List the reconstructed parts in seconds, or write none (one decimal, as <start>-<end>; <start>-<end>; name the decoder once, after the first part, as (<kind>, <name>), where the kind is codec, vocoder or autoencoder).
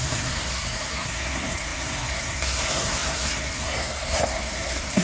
0.0-5.0 (codec, SNAC)